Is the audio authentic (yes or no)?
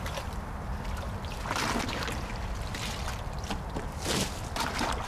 yes